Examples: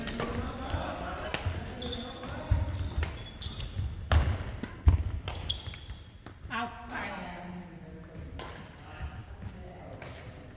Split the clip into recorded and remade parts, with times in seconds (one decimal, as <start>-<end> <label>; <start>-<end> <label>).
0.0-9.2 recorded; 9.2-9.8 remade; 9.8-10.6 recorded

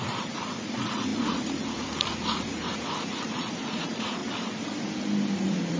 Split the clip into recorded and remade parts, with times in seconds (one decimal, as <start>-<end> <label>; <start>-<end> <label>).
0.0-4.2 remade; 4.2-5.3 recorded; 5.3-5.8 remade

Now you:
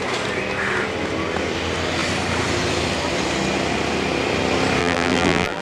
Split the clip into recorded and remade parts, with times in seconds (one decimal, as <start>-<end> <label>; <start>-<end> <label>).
0.0-4.8 recorded; 4.8-5.6 remade